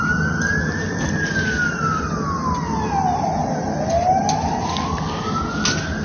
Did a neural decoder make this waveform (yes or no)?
no